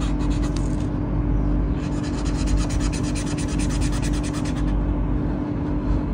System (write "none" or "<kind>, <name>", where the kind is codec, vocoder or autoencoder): none